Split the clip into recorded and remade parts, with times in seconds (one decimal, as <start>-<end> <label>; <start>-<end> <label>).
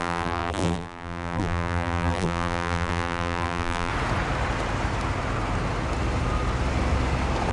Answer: 0.0-3.9 remade; 3.9-7.5 recorded